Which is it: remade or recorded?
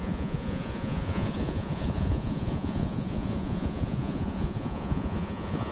remade